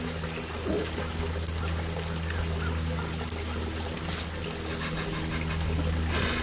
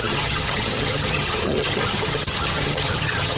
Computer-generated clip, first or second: second